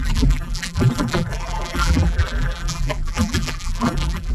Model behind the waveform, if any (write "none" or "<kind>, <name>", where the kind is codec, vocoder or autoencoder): vocoder, BigVGAN v2